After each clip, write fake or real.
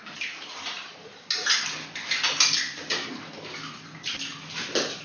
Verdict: real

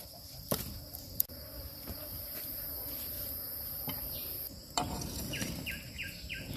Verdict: fake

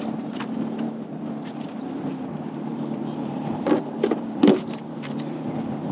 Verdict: fake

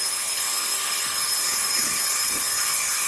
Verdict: fake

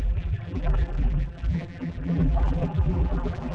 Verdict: fake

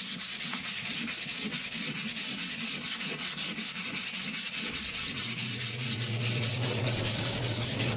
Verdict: fake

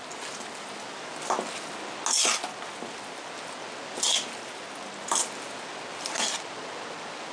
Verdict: real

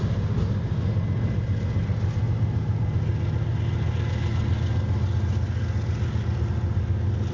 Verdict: real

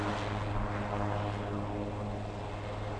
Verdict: real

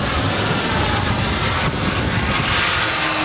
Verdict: real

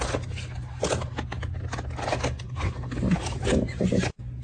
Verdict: real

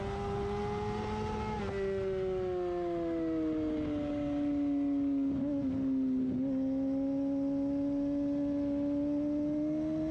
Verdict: real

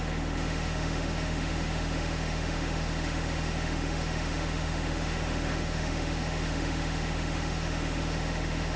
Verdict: fake